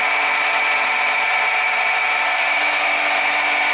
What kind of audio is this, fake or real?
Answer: real